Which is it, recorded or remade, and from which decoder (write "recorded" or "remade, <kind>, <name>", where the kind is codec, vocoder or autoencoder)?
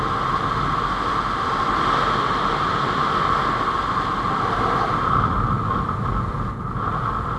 recorded